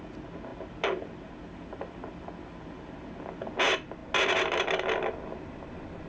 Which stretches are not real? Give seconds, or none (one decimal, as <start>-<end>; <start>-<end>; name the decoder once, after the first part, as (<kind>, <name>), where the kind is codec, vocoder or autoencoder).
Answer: none